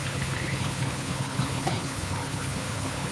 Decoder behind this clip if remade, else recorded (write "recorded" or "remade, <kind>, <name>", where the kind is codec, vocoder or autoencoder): remade, codec, HILCodec